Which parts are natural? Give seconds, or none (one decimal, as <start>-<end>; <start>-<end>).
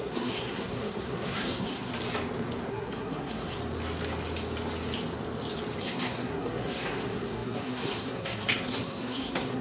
1.9-2.7; 3.6-5.8